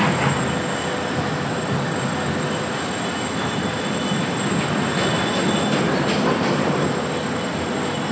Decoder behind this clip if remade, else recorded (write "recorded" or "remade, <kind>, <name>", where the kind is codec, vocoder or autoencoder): recorded